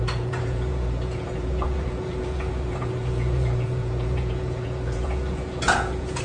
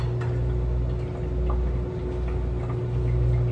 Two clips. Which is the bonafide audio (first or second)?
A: second